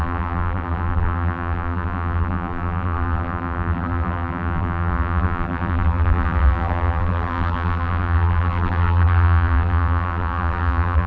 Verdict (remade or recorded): remade